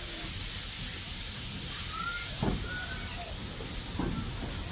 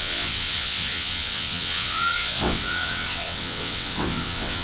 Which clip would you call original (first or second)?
first